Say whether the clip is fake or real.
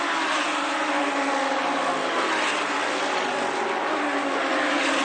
real